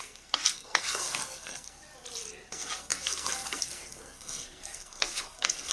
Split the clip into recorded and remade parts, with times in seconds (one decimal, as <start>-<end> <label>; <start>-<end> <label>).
0.0-1.8 remade; 1.8-2.5 recorded; 2.5-5.7 remade